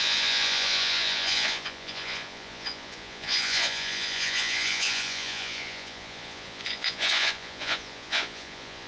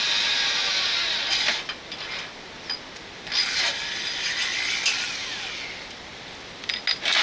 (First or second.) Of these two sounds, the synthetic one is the first